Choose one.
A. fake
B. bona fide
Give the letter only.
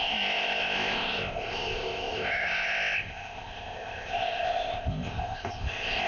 A